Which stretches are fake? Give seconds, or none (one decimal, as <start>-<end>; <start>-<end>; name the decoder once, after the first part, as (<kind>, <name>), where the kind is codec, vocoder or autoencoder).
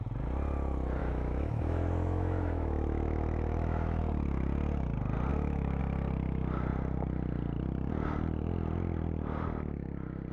1.0-4.0 (autoencoder, DAC-VAE); 5.3-5.8